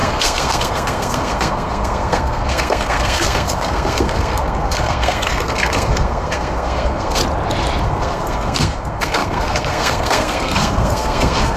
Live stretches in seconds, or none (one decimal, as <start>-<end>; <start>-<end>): 7.2-7.8